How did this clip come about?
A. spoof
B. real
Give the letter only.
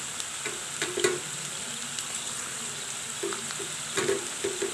B